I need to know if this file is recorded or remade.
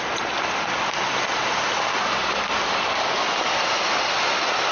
recorded